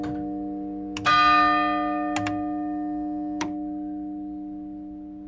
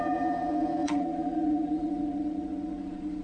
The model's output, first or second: second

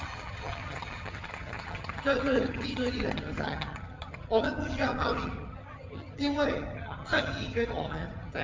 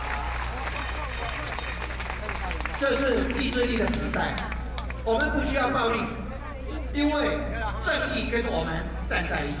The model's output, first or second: first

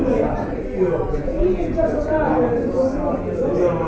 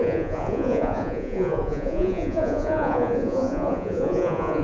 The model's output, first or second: second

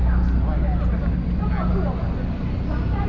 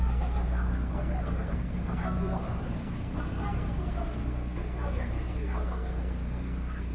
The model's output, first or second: second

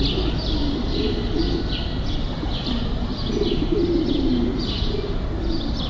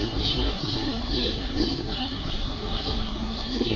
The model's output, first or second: second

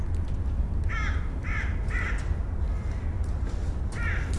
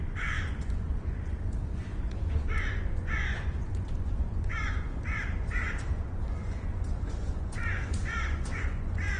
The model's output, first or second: second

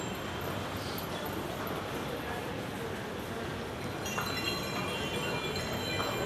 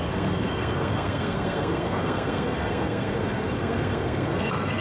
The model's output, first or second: second